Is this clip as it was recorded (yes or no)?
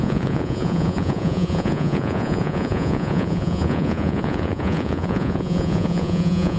no